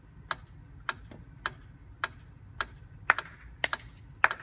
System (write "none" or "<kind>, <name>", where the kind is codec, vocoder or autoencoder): none